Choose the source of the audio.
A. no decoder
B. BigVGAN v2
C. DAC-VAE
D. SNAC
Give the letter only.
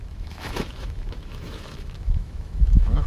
C